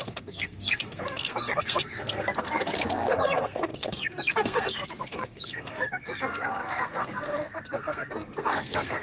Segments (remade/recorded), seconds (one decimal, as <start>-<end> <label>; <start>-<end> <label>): 0.0-9.0 remade

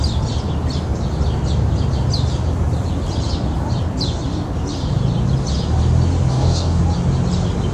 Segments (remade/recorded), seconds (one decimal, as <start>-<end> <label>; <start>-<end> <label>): 0.0-6.3 recorded; 6.3-6.8 remade; 6.8-7.7 recorded

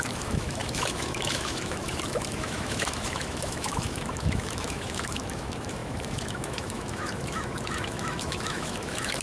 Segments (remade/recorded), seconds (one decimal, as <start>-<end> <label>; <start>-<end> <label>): 0.0-9.2 remade